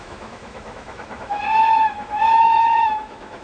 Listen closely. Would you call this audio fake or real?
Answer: fake